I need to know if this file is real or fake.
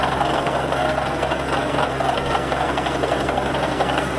fake